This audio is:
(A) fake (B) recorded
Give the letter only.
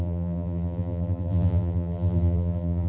A